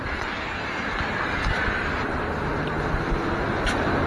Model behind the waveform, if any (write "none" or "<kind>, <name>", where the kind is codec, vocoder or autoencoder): none